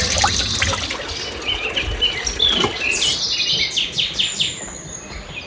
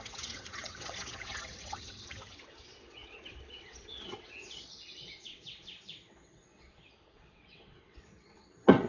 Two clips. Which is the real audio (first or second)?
first